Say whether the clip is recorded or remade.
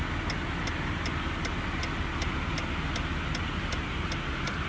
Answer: recorded